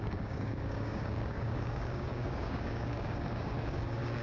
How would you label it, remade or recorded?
remade